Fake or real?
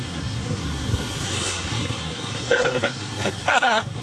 fake